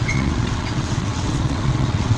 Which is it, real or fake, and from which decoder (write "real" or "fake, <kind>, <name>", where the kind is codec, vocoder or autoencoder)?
fake, vocoder, WaveNeXt